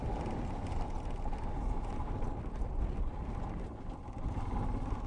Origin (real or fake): real